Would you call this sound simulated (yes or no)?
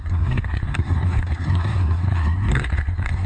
yes